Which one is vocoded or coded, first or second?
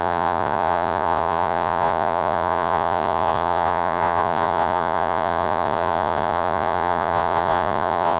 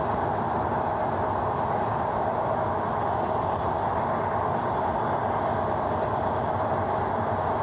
first